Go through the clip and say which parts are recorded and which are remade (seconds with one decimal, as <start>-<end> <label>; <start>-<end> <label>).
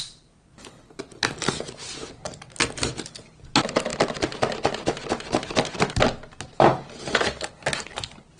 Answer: 0.0-8.4 recorded